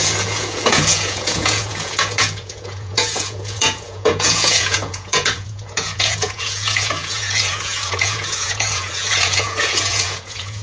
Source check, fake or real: fake